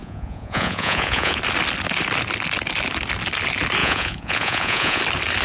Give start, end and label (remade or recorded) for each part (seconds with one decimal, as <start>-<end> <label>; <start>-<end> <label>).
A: 0.0-1.4 remade; 1.4-3.8 recorded; 3.8-5.0 remade; 5.0-5.4 recorded